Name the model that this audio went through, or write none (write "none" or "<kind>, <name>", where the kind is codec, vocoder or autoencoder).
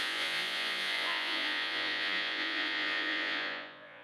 vocoder, Vocos